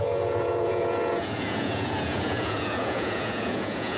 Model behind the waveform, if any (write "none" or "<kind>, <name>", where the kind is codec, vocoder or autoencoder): vocoder, Vocos